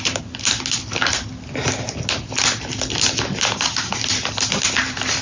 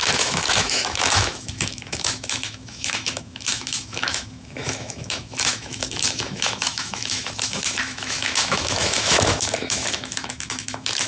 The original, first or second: first